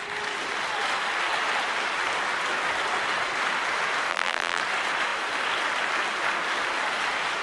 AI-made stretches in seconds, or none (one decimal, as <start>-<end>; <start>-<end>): 4.1-4.6